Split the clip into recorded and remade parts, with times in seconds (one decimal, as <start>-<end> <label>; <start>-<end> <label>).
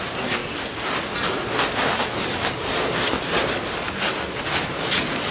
0.0-5.3 recorded